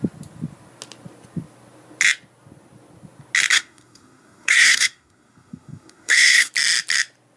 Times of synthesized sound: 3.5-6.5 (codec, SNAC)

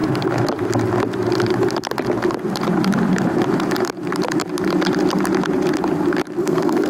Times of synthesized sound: 6.4-6.9 (codec, SNAC)

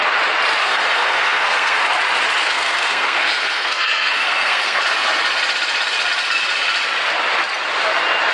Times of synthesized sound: 0.6-1.8 (codec, SNAC); 2.4-4.8

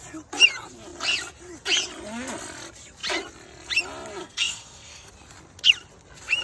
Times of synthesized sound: 4.2-5.1 (codec, SNAC)

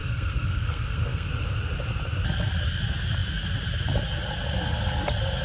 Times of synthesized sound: 0.0-1.3 (codec, SNAC)

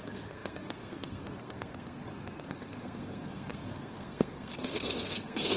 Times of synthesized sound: 0.0-5.6 (codec, SNAC)

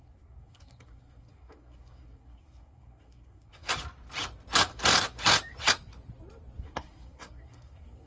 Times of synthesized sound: 0.0-3.7 (codec, SNAC); 6.6-8.1

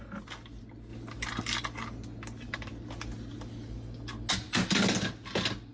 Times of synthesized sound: none